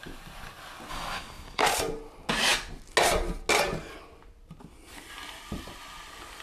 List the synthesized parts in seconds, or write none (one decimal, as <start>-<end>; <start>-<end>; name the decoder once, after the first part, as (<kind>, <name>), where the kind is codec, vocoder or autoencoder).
0.9-1.6 (codec, DAC)